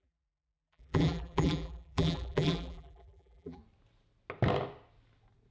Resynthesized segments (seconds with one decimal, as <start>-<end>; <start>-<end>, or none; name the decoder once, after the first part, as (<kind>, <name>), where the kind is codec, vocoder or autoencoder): 0.0-3.6 (vocoder, BigVGAN v2)